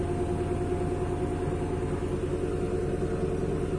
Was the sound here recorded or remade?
recorded